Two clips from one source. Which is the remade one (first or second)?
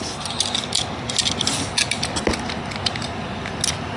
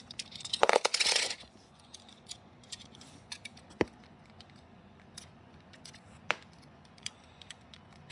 second